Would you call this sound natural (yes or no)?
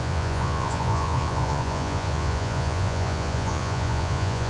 no